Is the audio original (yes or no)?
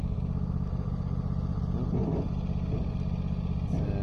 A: yes